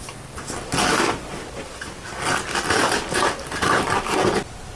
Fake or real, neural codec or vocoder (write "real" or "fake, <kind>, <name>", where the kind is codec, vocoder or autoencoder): real